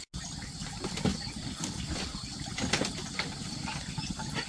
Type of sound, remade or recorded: recorded